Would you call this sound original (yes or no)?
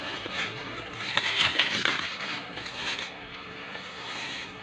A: no